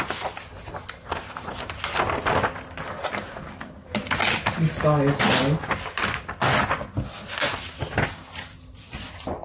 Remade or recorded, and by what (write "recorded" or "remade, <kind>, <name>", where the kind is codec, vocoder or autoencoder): recorded